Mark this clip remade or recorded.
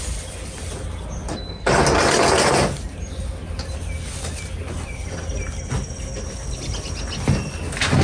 recorded